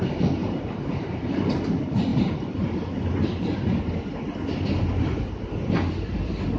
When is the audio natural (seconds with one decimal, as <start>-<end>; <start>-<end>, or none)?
0.0-0.4; 1.1-6.6